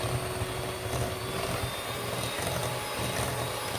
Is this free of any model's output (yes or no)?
yes